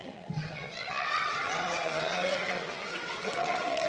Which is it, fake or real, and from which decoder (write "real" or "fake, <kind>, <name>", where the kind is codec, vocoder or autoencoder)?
fake, vocoder, WaveNeXt